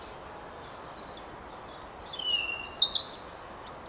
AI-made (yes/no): no